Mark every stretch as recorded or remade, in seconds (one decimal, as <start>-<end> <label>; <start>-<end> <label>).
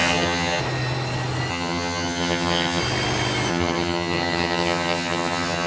0.0-0.6 remade; 0.6-1.5 recorded; 1.5-2.8 remade; 2.8-3.5 recorded; 3.5-5.7 remade